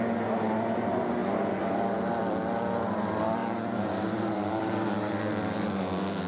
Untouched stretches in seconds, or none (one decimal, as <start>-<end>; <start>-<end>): 0.0-3.4; 5.2-6.3